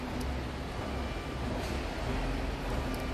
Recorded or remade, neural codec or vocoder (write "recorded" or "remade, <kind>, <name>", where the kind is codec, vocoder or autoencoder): recorded